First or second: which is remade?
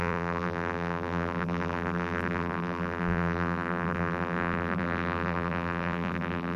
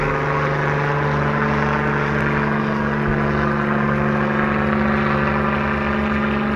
first